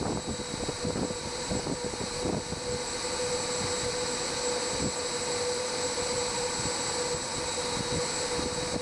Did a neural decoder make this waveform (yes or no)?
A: no